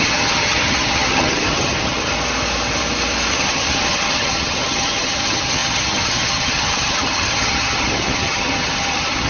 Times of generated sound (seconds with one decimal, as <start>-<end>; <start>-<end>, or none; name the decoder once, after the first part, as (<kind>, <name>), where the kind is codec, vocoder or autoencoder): 0.0-2.1 (vocoder, HiFi-GAN); 3.3-9.3